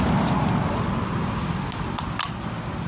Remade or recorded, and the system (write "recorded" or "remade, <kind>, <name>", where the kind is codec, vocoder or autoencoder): recorded